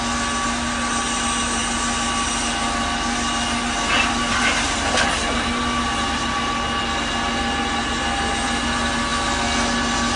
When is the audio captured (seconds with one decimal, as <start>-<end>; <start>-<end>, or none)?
0.0-10.2